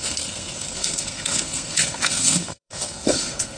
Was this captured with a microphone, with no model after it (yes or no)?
no